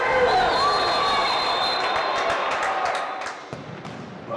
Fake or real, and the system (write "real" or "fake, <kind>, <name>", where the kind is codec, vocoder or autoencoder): real